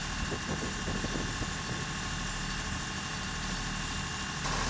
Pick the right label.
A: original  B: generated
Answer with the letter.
A